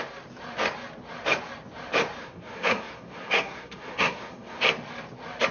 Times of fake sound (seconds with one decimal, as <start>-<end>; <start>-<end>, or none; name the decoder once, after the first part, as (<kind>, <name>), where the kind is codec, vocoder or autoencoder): 2.2-4.6 (codec, SNAC)